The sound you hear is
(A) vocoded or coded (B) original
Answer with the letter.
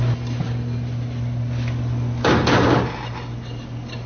B